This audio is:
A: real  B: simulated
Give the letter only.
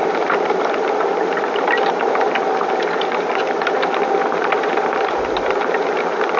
B